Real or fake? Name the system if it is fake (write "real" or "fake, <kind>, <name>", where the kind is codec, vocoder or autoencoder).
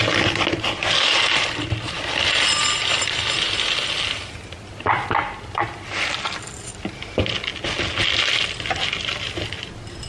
real